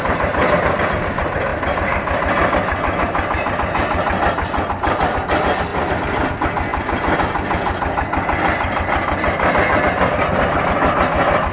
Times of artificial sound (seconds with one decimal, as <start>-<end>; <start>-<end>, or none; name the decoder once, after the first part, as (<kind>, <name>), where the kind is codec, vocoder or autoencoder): none